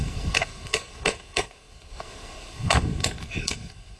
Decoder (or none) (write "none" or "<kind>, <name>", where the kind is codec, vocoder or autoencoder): codec, SNAC